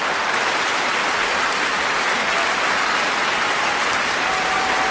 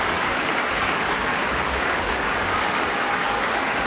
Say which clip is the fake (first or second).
second